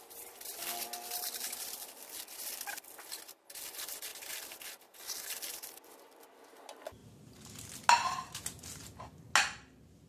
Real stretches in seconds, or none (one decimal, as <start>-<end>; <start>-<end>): 0.0-10.1